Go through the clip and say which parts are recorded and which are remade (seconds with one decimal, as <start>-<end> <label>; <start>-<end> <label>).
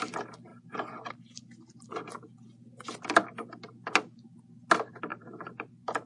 0.0-5.1 recorded; 5.1-6.1 remade